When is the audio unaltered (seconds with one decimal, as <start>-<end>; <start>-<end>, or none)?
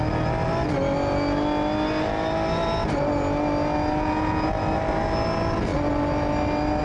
0.0-6.8